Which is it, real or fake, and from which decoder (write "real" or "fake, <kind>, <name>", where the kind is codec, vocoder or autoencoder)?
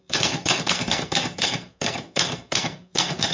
fake, codec, SNAC